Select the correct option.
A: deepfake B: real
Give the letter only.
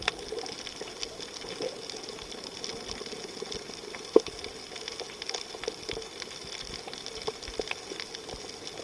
B